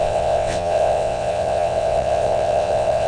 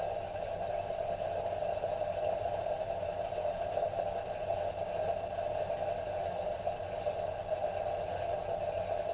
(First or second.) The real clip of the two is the second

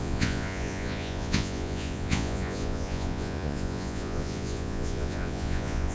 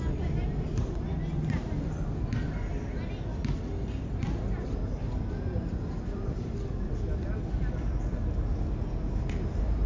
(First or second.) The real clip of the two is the second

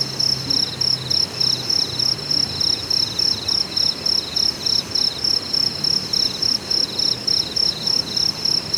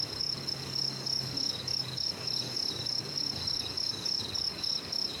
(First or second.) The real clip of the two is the first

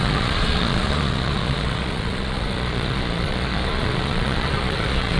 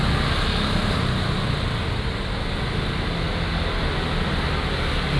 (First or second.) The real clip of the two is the second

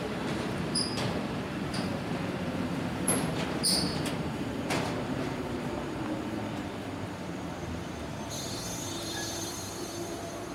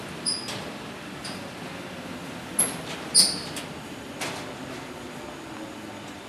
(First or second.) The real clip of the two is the second